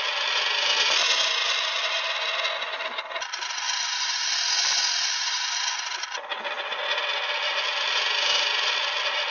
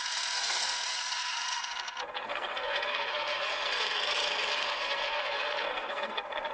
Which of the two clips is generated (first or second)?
second